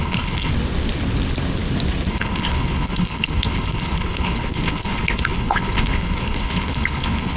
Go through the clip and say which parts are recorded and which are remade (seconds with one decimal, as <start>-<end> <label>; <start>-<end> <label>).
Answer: 0.0-0.5 remade; 0.5-2.1 recorded; 2.1-7.4 remade